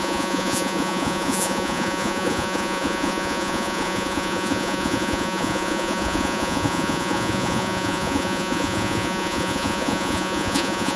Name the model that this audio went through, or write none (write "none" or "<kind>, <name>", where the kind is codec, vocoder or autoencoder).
vocoder, Vocos